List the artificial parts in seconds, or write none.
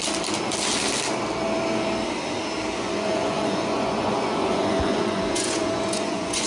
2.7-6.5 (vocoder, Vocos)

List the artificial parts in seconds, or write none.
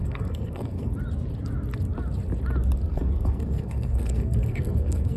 0.0-0.9 (codec, SNAC); 2.9-5.2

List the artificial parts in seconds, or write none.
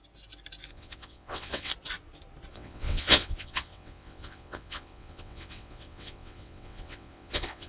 0.7-1.7 (vocoder, WaveNeXt); 2.5-7.7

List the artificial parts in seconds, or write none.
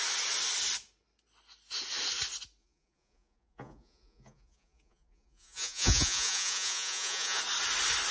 2.6-7.4 (vocoder, Vocos)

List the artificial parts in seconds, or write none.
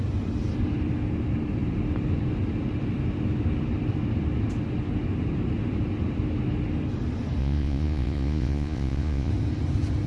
7.4-9.3 (vocoder, Vocos)